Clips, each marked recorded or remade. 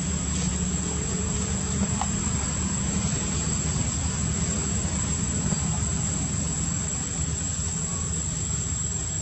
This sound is remade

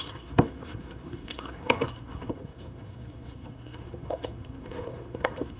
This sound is remade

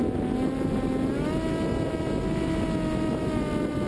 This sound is recorded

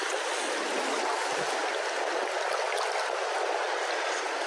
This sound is recorded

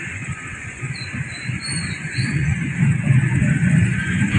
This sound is remade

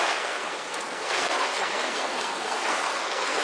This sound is remade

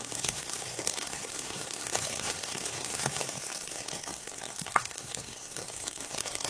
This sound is remade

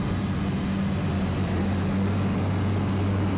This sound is recorded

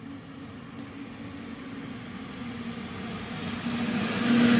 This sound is recorded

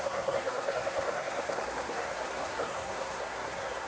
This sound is remade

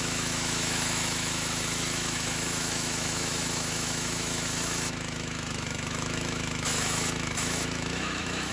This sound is remade